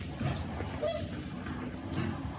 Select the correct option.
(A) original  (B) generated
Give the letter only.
A